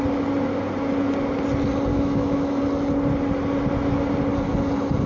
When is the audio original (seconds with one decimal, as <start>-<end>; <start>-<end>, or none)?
0.0-1.9; 2.6-5.1